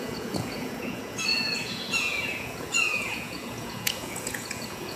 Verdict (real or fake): fake